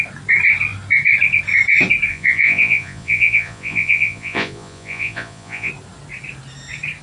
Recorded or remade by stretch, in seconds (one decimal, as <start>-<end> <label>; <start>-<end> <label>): 0.0-2.1 recorded; 2.1-5.7 remade; 5.7-7.0 recorded